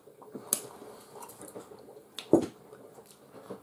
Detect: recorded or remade recorded